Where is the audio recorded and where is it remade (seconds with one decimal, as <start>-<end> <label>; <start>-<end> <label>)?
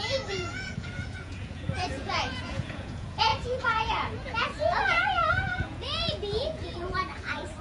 0.0-7.6 remade